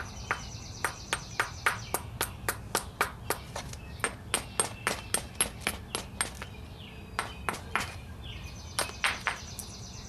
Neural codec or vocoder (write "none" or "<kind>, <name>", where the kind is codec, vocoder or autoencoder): none